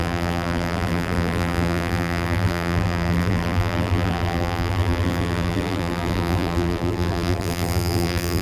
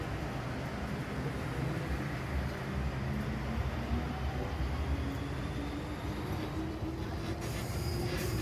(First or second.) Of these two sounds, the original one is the second